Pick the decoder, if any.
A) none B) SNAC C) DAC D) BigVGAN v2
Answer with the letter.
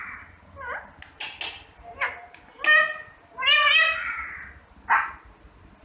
A